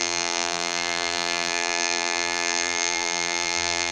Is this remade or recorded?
remade